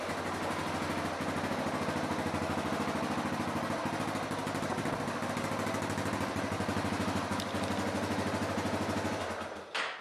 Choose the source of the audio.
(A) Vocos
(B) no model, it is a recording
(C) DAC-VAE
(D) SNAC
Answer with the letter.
B